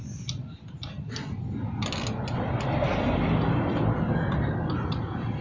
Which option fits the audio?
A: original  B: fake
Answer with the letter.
A